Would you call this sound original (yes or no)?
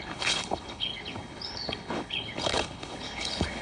no